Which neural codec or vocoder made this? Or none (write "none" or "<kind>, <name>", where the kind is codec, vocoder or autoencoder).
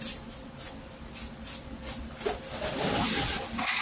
none